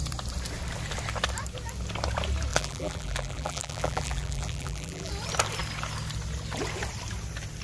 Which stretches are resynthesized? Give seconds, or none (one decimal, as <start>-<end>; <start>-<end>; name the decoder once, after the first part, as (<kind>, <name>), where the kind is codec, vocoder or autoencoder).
2.5-5.1 (vocoder, BigVGAN v2)